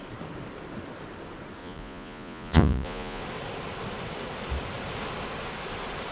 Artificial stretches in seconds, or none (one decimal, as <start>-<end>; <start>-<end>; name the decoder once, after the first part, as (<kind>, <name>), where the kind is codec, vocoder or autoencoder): 1.6-3.2 (vocoder, Vocos)